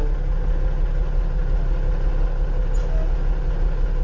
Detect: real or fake real